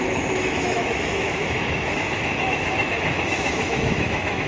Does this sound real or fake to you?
fake